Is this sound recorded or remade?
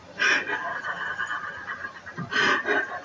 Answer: remade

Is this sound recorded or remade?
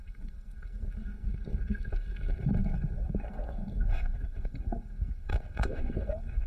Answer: remade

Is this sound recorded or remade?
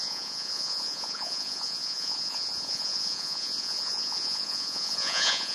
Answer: remade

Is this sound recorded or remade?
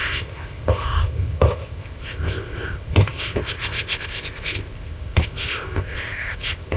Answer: remade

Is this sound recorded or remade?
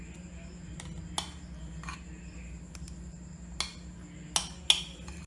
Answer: recorded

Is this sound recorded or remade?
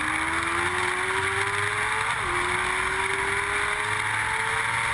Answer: recorded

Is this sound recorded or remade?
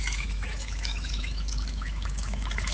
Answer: remade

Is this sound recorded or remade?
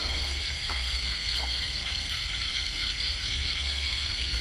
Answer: remade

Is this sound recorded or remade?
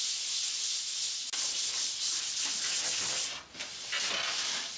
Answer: recorded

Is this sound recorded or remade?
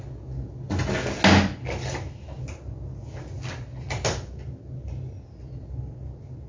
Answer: recorded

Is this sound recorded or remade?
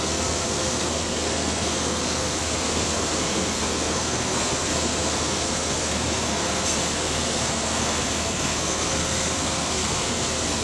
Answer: remade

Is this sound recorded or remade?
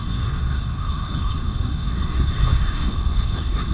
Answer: remade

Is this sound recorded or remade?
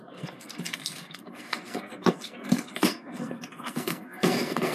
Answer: remade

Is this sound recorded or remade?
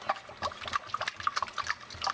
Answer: recorded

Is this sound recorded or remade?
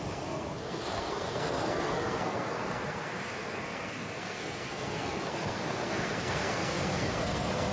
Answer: remade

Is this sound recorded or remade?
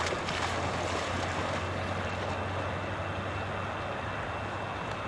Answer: recorded